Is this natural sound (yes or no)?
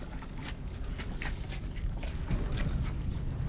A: no